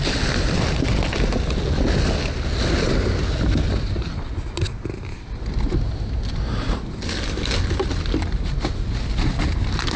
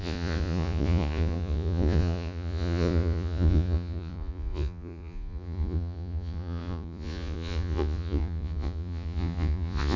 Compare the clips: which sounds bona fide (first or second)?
first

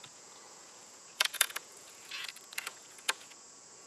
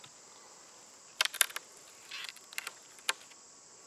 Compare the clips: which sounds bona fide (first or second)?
second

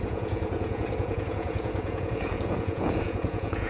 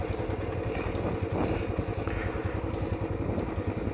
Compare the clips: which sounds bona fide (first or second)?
second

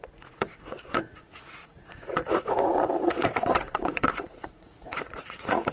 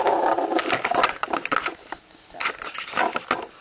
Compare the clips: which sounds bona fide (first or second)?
second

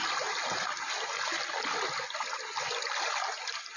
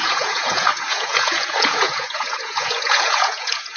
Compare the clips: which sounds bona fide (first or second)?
first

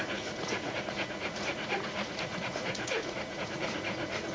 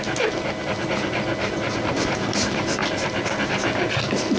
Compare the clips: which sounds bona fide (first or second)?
second